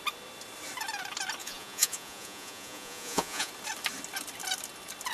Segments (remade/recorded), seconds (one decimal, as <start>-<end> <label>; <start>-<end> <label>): 0.0-1.4 recorded; 1.4-3.5 remade; 3.5-5.1 recorded